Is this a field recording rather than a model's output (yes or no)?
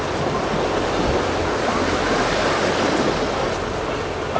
yes